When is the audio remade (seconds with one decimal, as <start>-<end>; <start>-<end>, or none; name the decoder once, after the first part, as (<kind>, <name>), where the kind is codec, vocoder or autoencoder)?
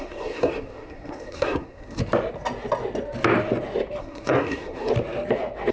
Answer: 0.0-2.0 (codec, SNAC); 4.0-4.9